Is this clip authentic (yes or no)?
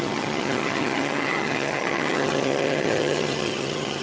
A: no